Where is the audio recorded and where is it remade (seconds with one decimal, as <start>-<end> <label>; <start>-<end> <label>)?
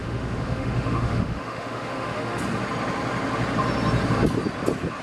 0.0-2.4 remade; 2.4-5.0 recorded